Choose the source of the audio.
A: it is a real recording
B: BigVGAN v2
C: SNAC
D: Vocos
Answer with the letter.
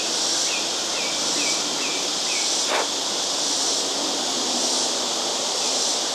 A